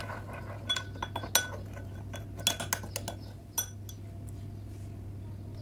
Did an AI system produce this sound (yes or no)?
no